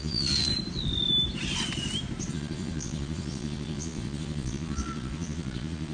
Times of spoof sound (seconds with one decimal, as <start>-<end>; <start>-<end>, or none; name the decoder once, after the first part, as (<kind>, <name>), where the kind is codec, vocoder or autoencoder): 0.0-0.5 (vocoder, Vocos); 2.3-5.9